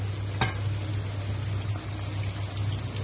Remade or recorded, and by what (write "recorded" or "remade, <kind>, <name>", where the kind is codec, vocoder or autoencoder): recorded